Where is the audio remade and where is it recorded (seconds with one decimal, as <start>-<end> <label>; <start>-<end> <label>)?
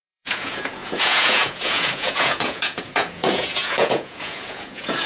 0.0-5.1 remade